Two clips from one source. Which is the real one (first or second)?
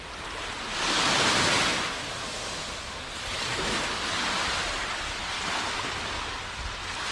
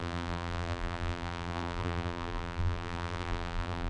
first